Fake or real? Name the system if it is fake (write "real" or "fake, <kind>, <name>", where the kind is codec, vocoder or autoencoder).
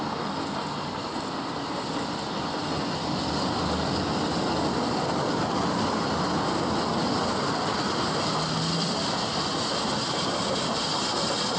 real